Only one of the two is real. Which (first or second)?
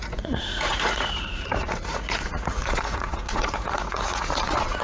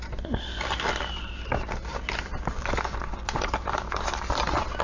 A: second